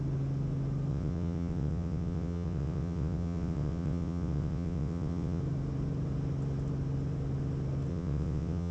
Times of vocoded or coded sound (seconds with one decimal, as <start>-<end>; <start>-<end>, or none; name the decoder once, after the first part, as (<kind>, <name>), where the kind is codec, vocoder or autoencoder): 0.9-5.4 (vocoder, WaveNeXt); 7.9-8.7